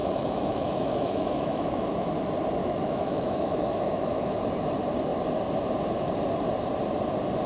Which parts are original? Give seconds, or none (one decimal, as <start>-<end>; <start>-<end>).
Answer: 2.1-2.6; 4.4-7.5